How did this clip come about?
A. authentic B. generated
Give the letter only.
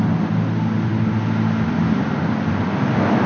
A